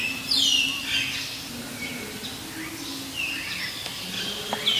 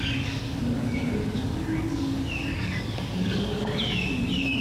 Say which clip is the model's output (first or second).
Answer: second